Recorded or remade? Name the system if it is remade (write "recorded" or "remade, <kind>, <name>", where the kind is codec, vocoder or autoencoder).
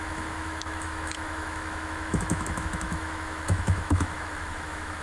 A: remade, autoencoder, DAC-VAE